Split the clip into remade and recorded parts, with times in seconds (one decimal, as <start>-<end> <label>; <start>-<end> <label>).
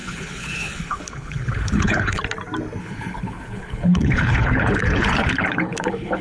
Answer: 0.0-2.2 remade; 2.2-2.8 recorded; 2.8-6.2 remade